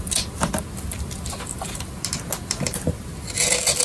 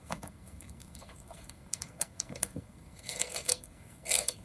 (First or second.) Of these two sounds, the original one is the first